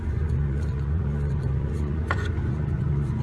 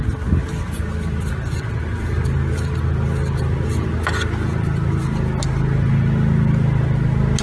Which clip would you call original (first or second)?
second